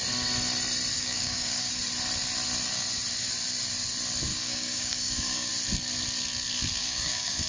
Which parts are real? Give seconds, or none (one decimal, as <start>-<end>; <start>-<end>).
0.0-0.9; 1.7-4.3; 5.5-6.8